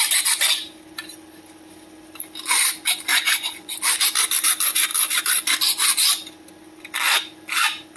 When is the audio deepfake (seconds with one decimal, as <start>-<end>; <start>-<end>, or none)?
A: 3.1-3.7